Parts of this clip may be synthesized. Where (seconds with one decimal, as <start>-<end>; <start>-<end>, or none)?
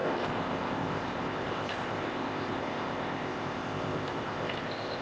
0.0-5.0